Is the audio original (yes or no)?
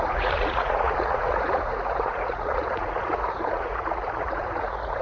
no